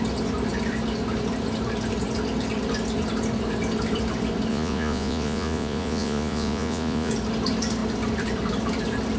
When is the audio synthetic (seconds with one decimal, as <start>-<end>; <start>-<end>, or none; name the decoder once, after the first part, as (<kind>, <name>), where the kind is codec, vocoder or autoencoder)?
4.5-7.1 (vocoder, Vocos)